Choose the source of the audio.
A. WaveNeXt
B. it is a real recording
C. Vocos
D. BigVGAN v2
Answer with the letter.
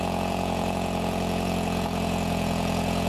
C